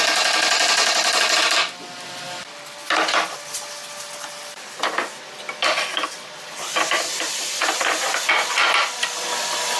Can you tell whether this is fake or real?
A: real